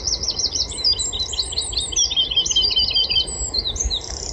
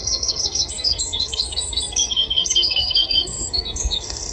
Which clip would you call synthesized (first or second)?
second